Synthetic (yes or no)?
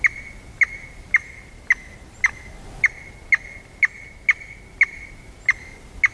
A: no